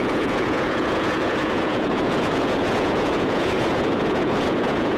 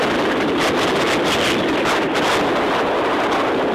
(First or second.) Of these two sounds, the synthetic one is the first